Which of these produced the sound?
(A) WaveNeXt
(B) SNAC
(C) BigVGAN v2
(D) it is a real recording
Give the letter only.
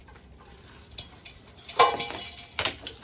D